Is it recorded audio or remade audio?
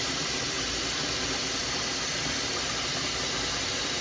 recorded